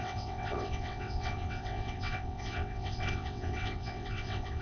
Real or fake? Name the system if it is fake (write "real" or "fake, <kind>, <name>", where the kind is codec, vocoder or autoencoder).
fake, vocoder, WaveNeXt